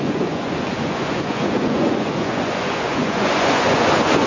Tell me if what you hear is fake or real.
fake